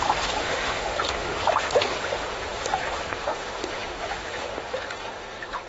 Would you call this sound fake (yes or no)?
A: yes